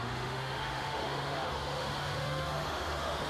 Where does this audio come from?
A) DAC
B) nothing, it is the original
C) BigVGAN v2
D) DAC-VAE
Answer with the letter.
D